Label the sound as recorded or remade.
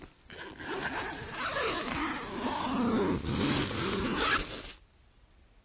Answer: recorded